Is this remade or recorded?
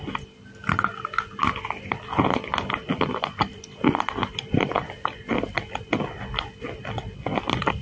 recorded